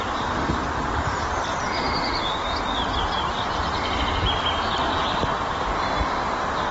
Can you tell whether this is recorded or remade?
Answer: remade